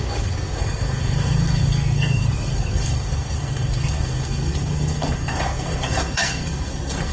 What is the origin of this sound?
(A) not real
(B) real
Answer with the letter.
A